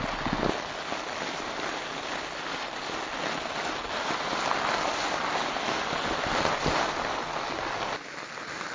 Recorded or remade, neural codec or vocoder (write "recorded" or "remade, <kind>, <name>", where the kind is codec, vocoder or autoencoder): recorded